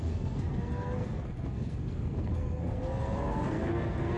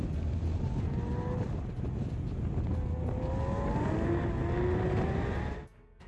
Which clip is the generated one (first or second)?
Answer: first